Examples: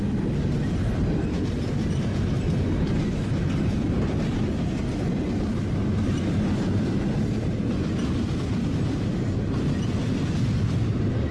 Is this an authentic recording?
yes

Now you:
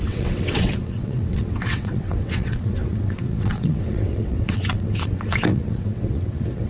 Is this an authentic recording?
no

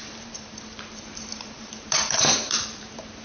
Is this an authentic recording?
no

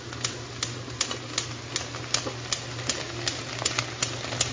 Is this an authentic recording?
yes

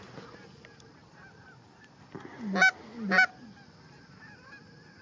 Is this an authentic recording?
yes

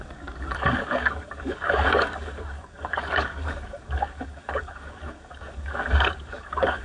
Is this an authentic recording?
no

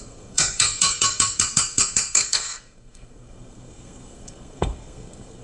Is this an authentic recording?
no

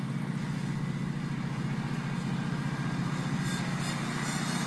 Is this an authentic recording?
yes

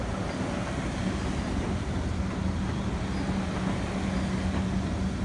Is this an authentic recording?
yes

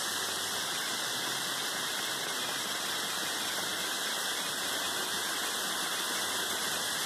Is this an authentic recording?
yes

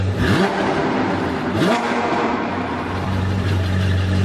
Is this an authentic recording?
no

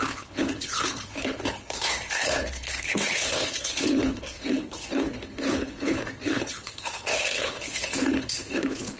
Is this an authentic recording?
no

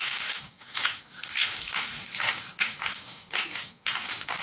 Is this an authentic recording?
no